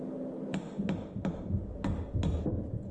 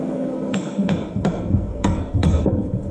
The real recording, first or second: first